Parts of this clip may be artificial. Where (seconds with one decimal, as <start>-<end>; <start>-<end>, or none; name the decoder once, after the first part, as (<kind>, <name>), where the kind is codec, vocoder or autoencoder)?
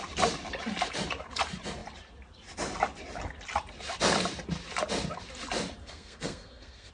5.8-6.9 (codec, SNAC)